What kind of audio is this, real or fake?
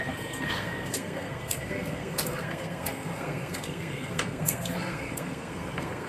fake